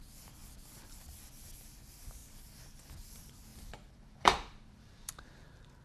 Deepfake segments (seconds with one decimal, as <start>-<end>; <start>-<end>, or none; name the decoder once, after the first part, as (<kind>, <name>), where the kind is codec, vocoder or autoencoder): 0.4-1.1 (vocoder, BigVGAN v2); 2.2-2.9; 3.5-5.3